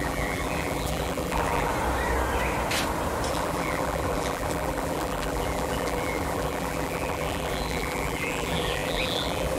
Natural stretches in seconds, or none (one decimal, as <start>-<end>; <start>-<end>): 1.7-3.3